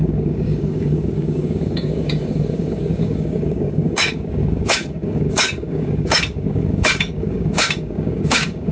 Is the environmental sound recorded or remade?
remade